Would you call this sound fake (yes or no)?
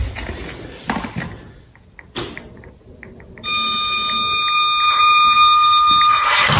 no